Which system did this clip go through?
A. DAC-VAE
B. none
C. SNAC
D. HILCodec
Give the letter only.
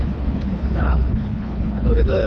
D